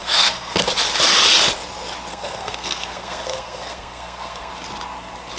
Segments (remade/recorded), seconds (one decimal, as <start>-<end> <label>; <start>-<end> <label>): 0.0-0.7 remade; 0.7-2.1 recorded; 2.1-4.5 remade; 4.5-5.4 recorded